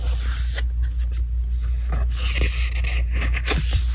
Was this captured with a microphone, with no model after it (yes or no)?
yes